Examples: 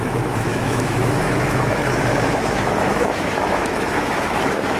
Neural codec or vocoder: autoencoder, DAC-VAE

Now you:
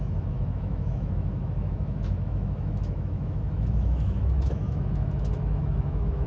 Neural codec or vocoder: autoencoder, DAC-VAE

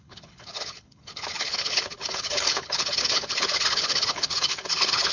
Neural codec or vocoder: codec, HILCodec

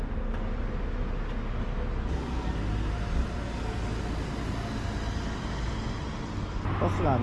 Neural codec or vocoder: none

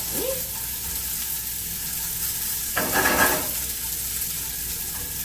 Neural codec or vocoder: none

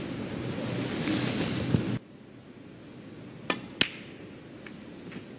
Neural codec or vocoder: none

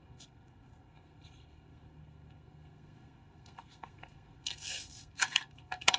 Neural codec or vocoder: codec, SNAC